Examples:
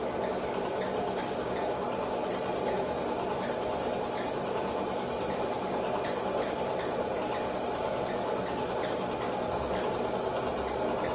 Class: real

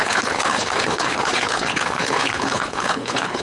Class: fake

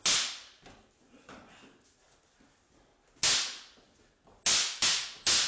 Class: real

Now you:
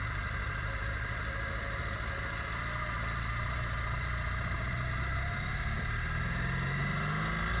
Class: real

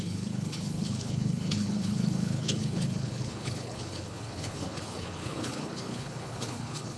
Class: fake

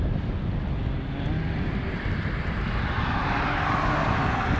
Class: real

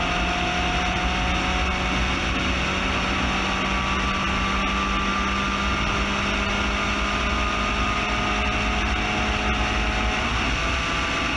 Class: real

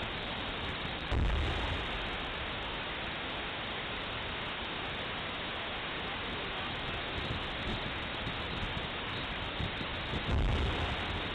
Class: real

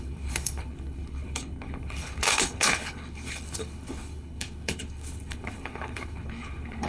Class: fake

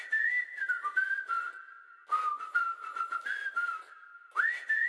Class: real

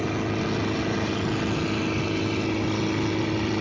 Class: real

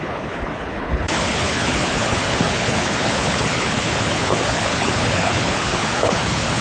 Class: fake